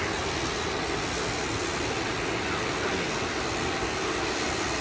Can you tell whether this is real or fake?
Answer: real